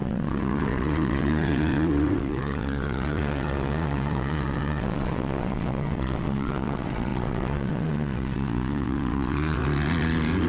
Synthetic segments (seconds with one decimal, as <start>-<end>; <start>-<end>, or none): 0.0-9.6